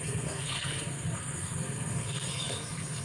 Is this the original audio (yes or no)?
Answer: no